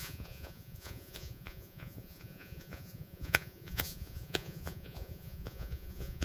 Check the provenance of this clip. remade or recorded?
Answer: remade